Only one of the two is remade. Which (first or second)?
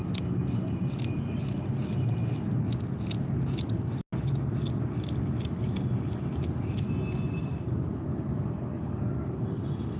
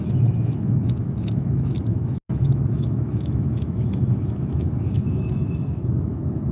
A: second